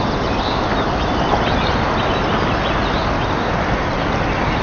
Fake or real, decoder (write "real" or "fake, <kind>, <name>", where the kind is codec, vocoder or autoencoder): real